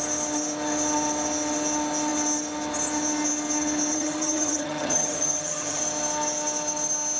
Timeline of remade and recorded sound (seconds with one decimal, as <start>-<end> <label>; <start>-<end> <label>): 0.0-3.9 recorded; 3.9-5.8 remade; 5.8-7.2 recorded